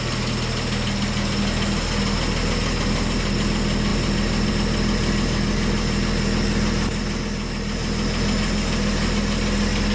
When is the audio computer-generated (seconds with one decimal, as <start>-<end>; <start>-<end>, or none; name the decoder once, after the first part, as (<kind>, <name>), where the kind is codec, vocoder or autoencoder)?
none